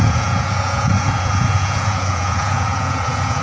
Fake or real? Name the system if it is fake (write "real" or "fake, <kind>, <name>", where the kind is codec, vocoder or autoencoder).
fake, vocoder, Vocos